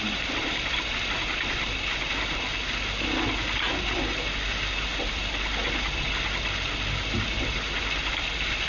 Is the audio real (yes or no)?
yes